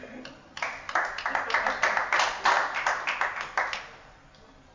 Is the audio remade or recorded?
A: recorded